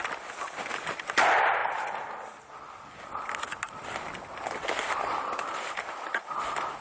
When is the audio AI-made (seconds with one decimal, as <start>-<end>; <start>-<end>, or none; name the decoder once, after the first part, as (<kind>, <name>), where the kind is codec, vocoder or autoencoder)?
none